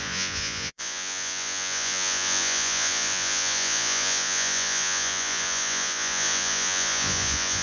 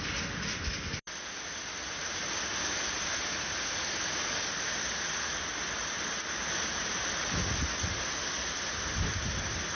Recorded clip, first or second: second